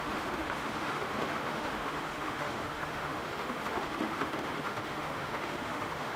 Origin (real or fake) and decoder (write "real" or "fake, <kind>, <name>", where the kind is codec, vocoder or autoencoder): fake, autoencoder, DAC-VAE